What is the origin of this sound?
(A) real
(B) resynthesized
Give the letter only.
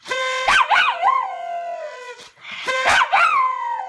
B